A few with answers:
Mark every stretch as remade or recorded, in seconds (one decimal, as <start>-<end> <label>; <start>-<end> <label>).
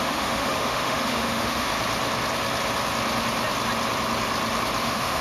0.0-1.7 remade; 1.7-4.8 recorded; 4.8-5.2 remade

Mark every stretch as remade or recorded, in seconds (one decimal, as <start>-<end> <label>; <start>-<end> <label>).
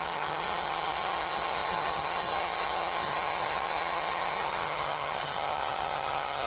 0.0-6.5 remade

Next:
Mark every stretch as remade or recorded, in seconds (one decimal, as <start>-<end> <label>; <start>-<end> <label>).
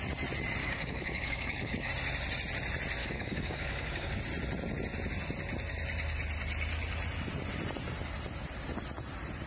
0.0-0.6 recorded; 0.6-1.9 remade; 1.9-3.0 recorded; 3.0-4.2 remade; 4.2-9.5 recorded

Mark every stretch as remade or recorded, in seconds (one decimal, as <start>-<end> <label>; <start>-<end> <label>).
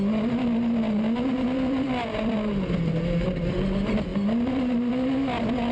0.0-0.8 recorded; 0.8-2.5 remade; 2.5-5.7 recorded